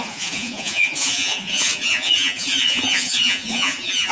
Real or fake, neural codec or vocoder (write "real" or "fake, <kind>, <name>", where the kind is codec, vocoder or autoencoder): fake, vocoder, Vocos